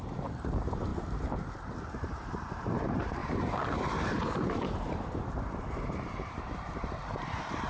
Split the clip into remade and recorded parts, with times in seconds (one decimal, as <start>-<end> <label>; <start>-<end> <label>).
0.0-3.2 remade; 3.2-4.1 recorded; 4.1-7.7 remade